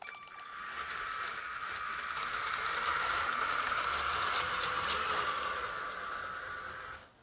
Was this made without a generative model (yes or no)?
yes